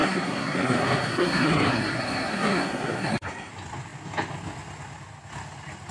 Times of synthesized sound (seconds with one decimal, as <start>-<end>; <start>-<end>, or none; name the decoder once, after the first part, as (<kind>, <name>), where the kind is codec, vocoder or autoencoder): 0.0-3.5 (codec, SNAC)